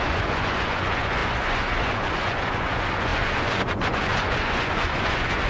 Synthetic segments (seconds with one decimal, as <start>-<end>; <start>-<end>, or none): 0.0-5.5